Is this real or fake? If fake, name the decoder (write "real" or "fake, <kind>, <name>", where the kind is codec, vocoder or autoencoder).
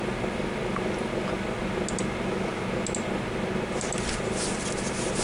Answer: real